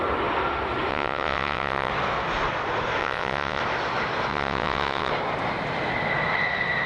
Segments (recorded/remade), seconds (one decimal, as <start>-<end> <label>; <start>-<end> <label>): 0.0-0.9 recorded; 0.9-1.9 remade; 1.9-3.0 recorded; 3.0-3.6 remade; 3.6-4.3 recorded; 4.3-5.1 remade; 5.1-6.9 recorded